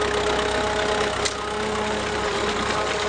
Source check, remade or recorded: recorded